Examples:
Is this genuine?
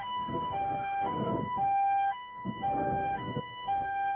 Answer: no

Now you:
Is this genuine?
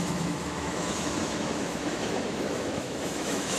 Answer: no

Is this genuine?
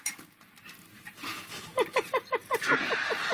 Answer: yes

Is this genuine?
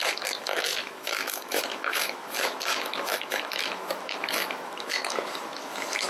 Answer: no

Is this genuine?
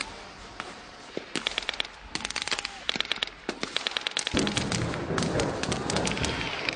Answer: yes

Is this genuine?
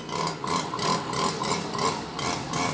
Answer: yes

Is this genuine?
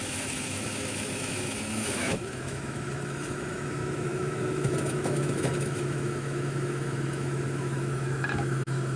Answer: no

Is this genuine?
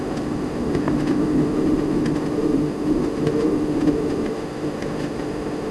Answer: no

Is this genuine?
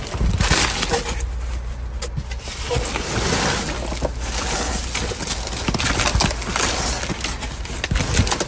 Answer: yes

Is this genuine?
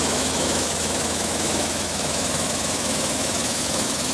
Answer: no